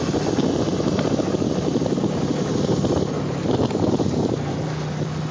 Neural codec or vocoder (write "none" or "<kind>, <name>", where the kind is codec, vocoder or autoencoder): none